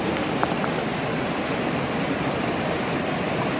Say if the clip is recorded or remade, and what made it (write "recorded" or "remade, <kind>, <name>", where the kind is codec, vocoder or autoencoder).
recorded